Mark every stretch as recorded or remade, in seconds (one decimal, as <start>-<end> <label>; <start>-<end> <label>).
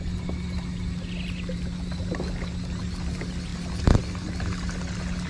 0.0-5.3 recorded